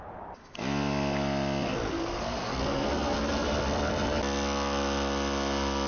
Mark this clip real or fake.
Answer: real